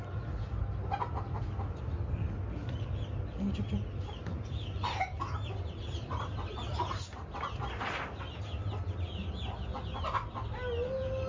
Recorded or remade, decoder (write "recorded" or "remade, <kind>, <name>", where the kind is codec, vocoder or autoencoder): recorded